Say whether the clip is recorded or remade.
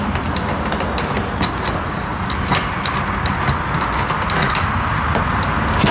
recorded